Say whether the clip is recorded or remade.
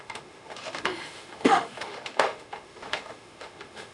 remade